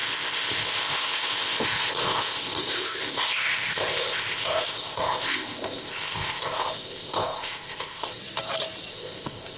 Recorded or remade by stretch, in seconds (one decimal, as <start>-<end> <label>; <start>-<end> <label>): 0.0-8.2 remade; 8.2-8.9 recorded; 8.9-9.6 remade